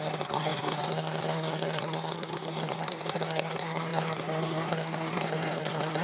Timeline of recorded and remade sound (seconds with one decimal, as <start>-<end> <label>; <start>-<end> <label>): 0.0-6.0 remade